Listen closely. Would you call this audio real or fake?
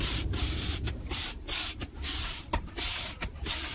fake